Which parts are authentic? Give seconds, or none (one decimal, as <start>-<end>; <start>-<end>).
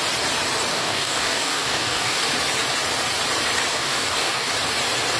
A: 0.0-0.7; 2.3-3.7; 4.5-5.2